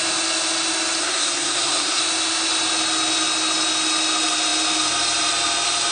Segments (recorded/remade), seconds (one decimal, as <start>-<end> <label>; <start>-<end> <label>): 0.0-1.0 recorded; 1.0-2.0 remade; 2.0-5.9 recorded